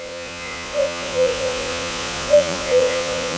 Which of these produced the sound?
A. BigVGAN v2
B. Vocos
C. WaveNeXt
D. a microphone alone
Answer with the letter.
B